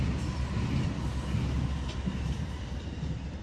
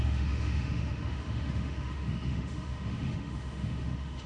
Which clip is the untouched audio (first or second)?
first